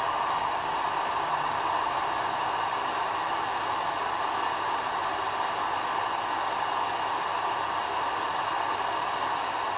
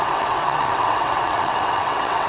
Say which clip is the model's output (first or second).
second